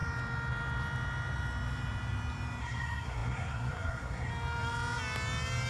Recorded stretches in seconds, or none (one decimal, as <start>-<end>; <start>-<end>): 0.0-2.6; 4.3-5.7